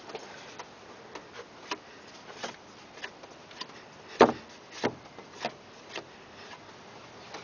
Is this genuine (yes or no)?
yes